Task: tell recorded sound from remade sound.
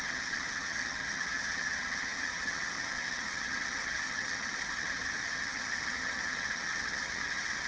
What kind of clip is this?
remade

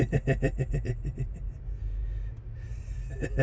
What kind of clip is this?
recorded